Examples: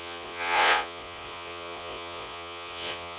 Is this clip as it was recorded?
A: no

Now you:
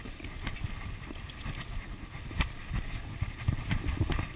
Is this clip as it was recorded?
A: yes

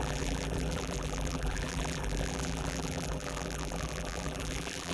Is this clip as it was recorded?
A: no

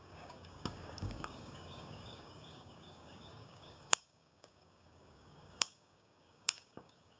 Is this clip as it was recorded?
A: no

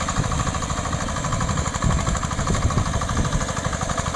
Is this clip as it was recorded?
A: yes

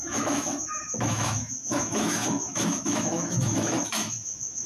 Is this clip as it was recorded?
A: no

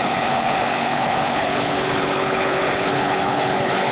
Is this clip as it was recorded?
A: no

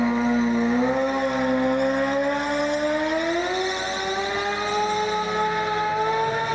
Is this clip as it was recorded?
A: yes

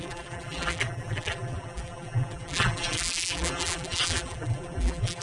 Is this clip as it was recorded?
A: no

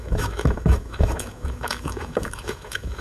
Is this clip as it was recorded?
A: no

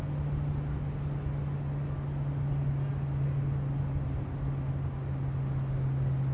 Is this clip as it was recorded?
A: yes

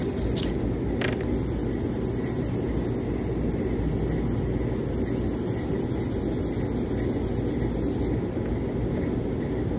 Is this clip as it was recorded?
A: yes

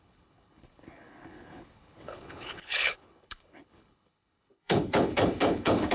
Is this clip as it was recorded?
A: no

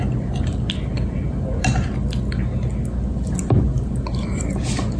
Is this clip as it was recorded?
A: yes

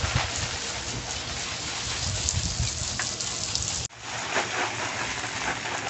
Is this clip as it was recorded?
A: yes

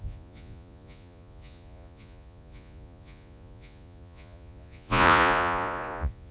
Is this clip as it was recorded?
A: no